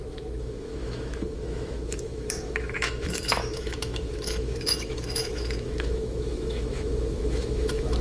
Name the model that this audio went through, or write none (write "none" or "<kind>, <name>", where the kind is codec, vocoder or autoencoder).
autoencoder, DAC-VAE